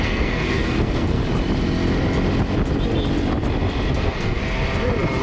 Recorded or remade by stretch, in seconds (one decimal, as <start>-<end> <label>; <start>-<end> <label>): 0.0-1.2 remade; 1.2-3.9 recorded; 3.9-4.4 remade; 4.4-5.2 recorded